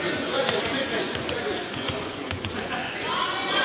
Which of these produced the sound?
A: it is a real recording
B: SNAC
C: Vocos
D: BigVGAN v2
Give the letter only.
C